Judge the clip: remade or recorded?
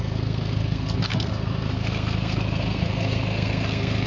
remade